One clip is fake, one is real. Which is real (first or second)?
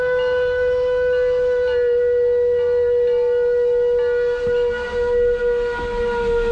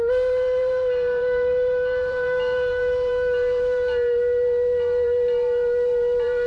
first